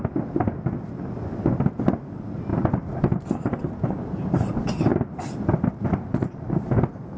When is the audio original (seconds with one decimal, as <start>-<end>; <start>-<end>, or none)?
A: 0.0-2.5; 3.6-4.9; 6.5-7.2